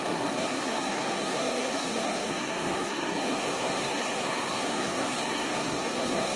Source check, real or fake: fake